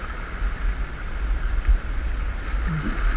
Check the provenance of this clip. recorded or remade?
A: recorded